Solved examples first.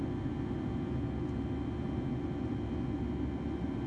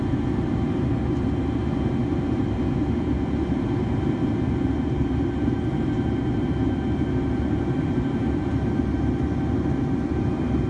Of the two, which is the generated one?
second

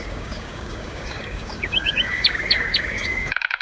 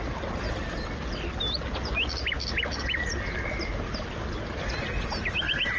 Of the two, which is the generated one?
first